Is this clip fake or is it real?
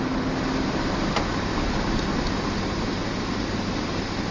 real